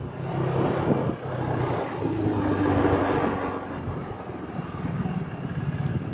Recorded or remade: recorded